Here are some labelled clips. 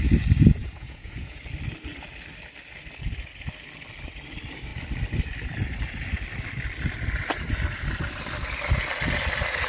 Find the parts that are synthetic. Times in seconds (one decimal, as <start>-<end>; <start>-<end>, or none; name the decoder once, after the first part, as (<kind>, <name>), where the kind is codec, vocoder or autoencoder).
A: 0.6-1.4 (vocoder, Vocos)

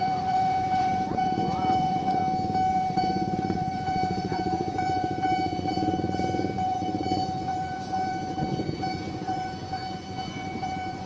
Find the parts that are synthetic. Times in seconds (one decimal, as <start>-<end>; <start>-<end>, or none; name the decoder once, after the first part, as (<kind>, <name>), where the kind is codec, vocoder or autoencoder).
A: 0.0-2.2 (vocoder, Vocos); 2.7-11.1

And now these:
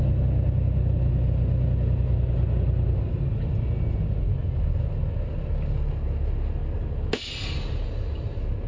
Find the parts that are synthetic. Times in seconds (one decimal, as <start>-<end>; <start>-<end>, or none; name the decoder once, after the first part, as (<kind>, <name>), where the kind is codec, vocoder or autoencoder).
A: none